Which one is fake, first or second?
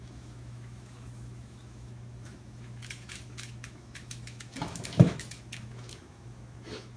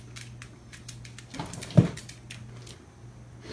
first